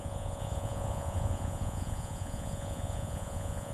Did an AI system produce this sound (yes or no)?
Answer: yes